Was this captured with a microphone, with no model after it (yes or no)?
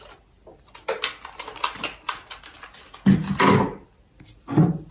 yes